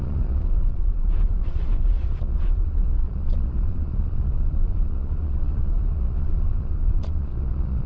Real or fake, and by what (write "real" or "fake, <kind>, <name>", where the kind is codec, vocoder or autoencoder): fake, vocoder, Vocos